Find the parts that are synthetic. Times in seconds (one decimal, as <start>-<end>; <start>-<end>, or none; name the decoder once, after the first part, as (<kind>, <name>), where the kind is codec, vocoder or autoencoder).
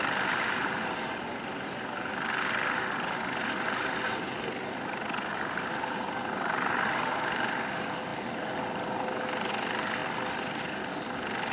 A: none